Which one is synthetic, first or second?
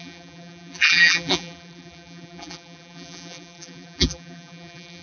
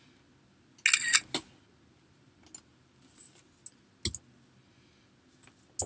first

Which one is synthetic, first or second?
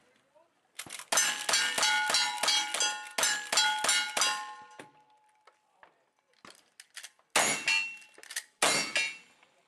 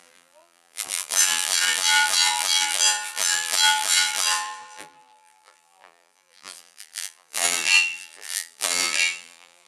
second